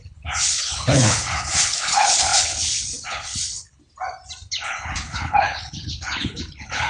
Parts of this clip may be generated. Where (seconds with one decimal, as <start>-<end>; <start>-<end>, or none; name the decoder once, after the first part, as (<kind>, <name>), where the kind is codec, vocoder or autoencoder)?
0.0-3.8 (codec, HILCodec); 4.5-6.9